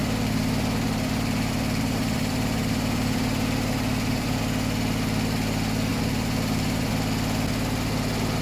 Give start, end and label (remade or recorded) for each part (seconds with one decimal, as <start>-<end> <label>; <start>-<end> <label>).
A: 0.0-4.4 remade; 4.4-5.9 recorded; 5.9-6.9 remade; 6.9-8.4 recorded